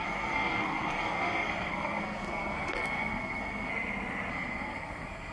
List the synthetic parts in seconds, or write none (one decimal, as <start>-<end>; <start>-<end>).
0.0-3.7; 4.3-5.3